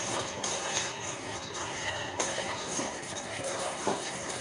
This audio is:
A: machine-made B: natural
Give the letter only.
A